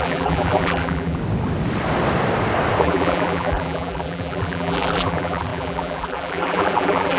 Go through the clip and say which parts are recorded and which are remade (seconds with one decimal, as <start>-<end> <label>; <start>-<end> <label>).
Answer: 0.0-1.2 remade; 1.2-2.8 recorded; 2.8-7.2 remade

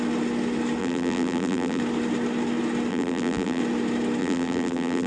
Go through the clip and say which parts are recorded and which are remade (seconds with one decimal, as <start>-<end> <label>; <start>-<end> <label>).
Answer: 0.0-0.8 recorded; 0.8-1.8 remade; 1.8-2.9 recorded; 2.9-3.6 remade; 3.6-4.2 recorded; 4.2-5.1 remade